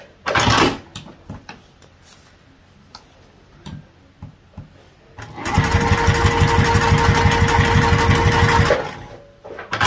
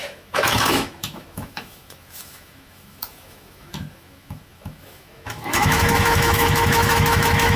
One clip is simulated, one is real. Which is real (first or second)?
first